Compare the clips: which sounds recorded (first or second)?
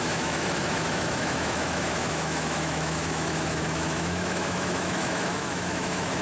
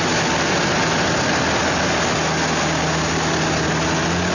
second